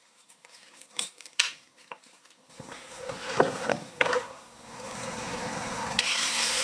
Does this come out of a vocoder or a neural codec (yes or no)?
yes